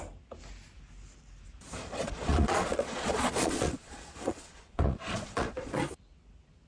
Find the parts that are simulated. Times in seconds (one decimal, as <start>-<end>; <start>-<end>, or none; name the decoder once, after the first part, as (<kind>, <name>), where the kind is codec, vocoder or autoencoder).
1.8-5.8 (vocoder, Vocos)